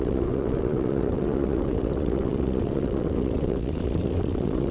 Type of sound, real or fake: fake